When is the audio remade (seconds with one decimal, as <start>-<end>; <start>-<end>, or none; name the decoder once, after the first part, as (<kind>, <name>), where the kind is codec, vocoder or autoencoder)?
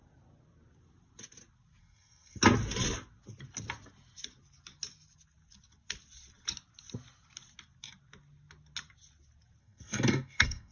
1.8-2.4 (codec, SNAC); 9.6-10.7